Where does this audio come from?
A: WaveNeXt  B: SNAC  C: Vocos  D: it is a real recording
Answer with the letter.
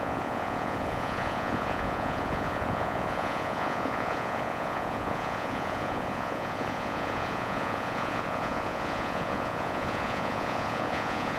C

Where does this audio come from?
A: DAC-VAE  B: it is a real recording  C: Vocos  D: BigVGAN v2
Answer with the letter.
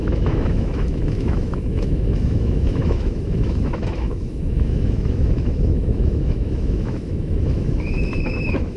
A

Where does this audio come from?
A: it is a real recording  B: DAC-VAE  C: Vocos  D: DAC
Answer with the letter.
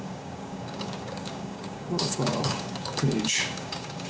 D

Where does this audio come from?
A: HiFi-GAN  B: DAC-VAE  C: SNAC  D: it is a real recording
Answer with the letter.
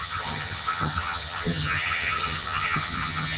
A